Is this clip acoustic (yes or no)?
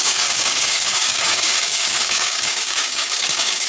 no